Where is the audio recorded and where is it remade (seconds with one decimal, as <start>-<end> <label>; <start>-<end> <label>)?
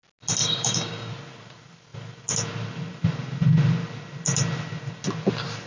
0.0-0.4 recorded; 0.4-1.1 remade; 1.1-5.7 recorded